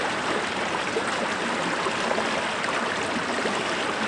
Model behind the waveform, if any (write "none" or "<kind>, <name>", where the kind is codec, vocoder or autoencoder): none